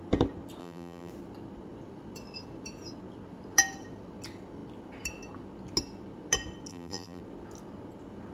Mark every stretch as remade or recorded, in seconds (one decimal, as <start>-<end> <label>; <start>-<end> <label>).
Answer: 0.0-0.6 recorded; 0.6-1.1 remade; 1.1-6.7 recorded; 6.7-7.2 remade; 7.2-8.3 recorded